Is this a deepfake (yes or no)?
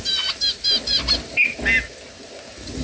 no